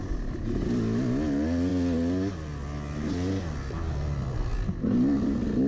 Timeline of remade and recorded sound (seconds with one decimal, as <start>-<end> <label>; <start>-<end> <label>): 0.0-5.7 recorded